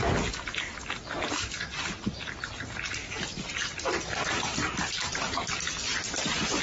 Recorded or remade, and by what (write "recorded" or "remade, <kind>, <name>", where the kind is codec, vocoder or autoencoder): recorded